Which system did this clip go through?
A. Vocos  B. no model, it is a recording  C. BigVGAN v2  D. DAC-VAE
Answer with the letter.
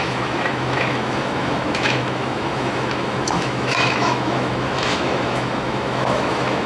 D